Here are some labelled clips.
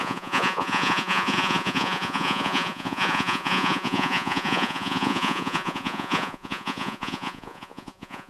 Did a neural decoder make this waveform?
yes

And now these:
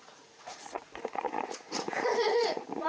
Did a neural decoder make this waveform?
yes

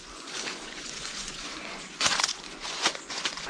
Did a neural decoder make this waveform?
yes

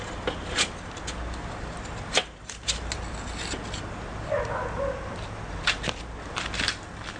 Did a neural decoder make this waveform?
no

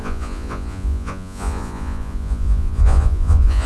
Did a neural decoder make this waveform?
yes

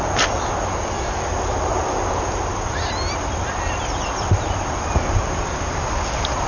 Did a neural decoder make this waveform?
no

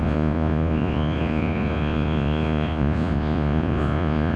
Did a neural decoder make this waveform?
yes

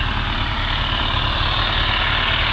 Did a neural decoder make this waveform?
no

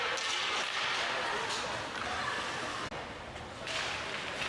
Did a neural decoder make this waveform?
no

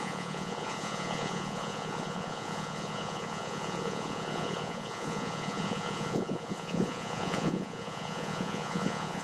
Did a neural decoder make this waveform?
yes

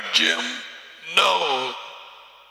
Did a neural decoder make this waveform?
no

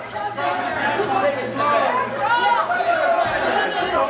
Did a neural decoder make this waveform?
no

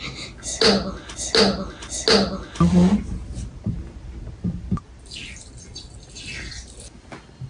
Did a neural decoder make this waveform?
no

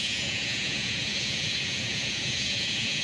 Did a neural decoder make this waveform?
yes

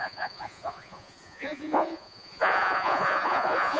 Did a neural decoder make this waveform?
yes